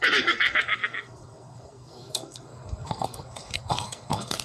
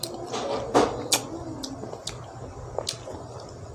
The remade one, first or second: first